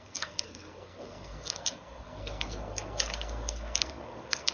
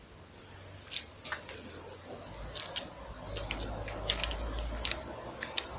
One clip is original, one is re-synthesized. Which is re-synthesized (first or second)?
first